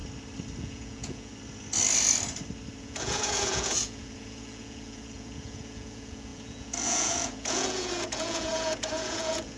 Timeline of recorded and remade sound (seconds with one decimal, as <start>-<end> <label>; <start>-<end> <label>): 0.0-0.6 recorded; 0.6-1.3 remade; 1.3-2.8 recorded; 2.8-9.6 remade